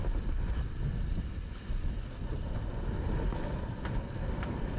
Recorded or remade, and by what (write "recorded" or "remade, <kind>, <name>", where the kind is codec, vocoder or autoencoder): recorded